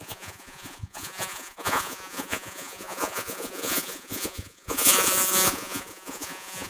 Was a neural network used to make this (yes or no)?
yes